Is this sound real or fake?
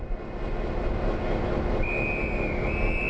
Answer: real